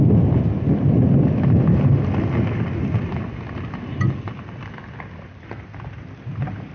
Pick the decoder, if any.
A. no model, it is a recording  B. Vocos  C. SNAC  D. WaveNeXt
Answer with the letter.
A